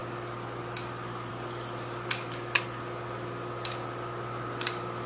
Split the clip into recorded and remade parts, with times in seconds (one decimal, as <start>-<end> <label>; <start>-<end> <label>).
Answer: 0.0-5.1 recorded